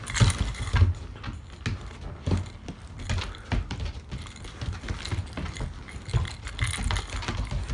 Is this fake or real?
real